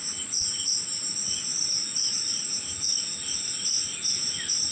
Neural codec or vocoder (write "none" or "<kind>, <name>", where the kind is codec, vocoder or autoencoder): none